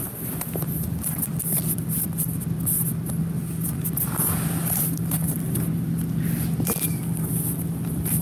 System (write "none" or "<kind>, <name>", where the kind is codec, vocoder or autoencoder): none